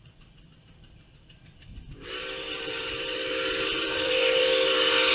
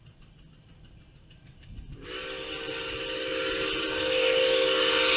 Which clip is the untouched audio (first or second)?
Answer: second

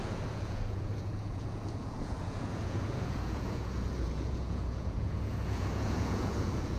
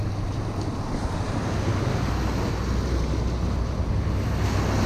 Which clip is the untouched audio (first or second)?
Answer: second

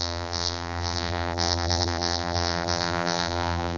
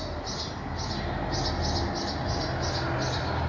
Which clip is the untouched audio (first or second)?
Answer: second